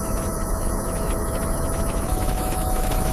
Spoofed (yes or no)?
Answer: yes